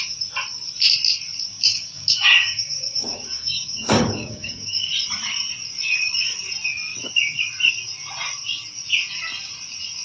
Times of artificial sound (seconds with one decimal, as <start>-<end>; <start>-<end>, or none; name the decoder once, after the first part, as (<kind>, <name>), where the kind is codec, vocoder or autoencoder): 1.5-4.9 (codec, DAC)